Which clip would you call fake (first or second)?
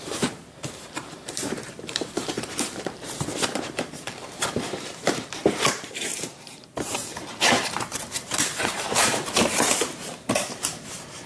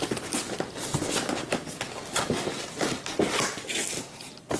first